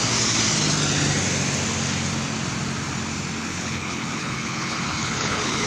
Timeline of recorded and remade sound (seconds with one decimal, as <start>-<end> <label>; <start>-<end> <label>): 0.0-3.4 recorded; 3.4-5.7 remade